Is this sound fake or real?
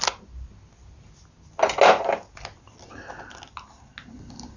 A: real